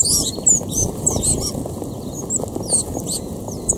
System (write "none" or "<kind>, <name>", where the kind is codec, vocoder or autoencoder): none